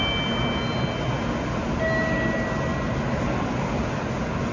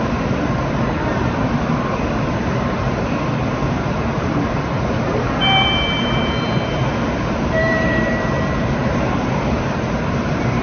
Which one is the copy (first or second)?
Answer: second